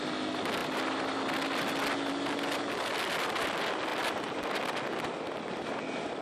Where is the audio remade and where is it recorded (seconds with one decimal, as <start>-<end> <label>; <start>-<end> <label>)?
0.0-6.2 recorded